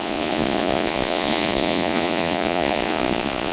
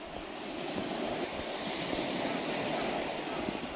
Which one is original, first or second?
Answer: second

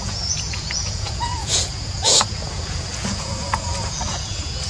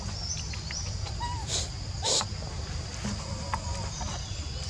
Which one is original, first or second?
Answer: second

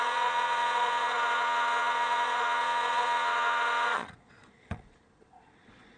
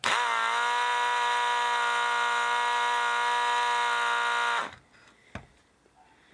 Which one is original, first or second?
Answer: second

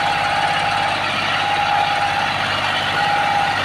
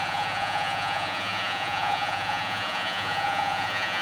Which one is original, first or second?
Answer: first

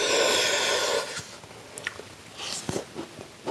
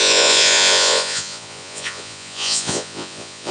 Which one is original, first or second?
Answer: first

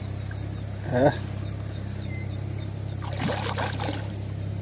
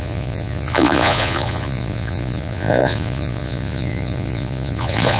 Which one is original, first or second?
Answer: first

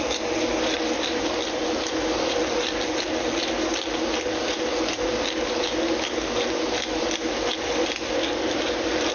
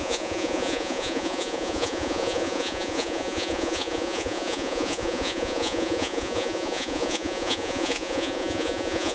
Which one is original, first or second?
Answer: first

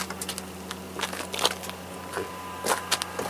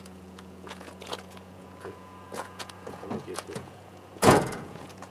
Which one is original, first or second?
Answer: first